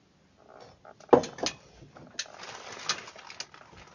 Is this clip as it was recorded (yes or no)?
yes